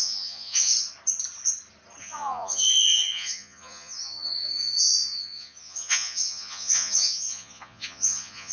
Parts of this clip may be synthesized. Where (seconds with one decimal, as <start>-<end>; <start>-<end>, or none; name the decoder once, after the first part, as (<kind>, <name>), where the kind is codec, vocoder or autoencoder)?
0.0-0.7 (vocoder, Vocos); 2.0-8.5